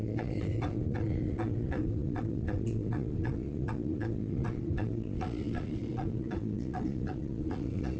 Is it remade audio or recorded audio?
remade